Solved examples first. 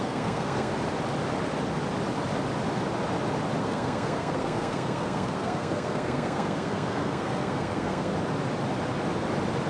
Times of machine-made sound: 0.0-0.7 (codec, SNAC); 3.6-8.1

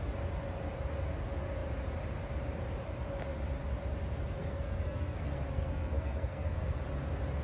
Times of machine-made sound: 4.4-6.8 (codec, SNAC)